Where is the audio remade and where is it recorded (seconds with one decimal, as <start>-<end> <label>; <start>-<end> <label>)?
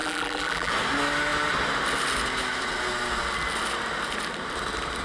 0.0-0.7 remade; 0.7-5.0 recorded